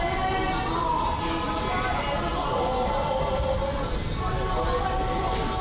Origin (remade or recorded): recorded